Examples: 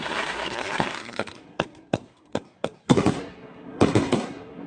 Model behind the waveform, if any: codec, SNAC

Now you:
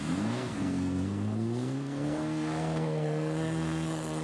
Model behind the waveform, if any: codec, SNAC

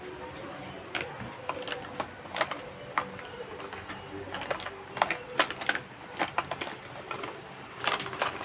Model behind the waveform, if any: none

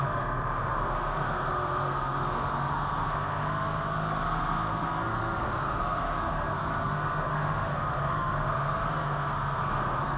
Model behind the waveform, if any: codec, SNAC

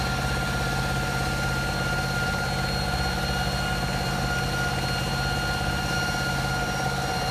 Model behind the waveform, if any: none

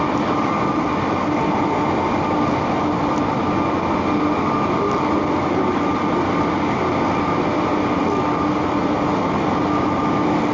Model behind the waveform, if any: none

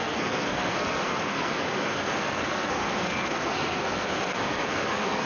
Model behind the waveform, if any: codec, SNAC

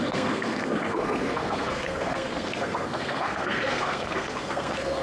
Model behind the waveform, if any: codec, SNAC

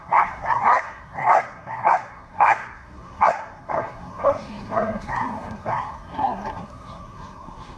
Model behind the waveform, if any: codec, SNAC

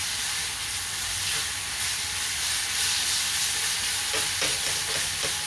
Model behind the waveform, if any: none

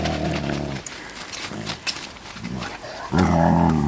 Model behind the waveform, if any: none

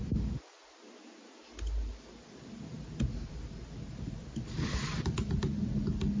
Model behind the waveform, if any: none